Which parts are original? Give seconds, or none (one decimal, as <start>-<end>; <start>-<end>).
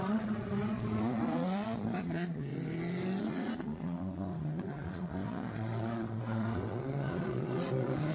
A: 2.5-3.2